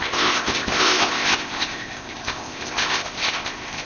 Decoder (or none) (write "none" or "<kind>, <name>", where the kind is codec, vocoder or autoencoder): codec, ZipCodec